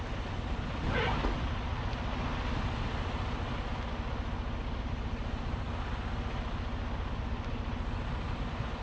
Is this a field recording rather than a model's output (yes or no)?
yes